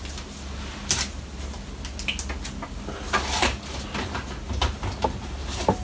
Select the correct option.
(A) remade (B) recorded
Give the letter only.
B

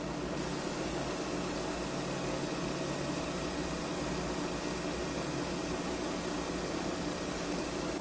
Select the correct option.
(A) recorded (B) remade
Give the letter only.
A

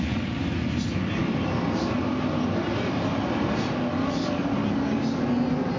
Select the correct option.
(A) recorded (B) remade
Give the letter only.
A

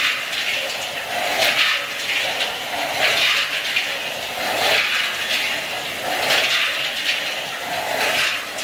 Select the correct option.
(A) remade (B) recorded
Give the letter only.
B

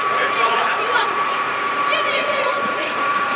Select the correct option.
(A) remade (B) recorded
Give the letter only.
A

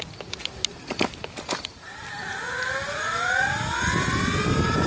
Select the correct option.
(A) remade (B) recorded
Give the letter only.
B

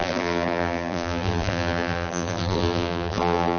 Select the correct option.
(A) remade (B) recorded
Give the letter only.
A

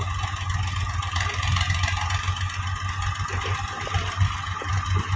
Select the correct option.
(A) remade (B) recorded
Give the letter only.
B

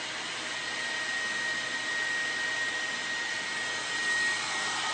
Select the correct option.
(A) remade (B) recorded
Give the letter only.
B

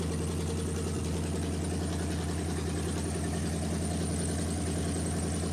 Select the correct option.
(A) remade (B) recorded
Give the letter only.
B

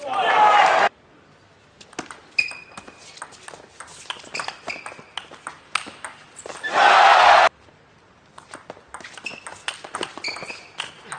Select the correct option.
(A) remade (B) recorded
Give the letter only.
B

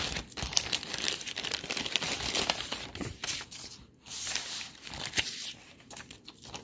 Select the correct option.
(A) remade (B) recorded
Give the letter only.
A